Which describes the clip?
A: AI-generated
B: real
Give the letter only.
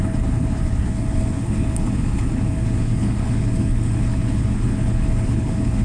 A